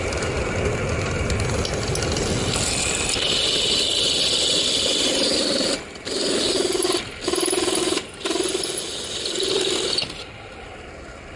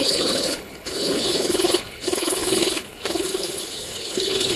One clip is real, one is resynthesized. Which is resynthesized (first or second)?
second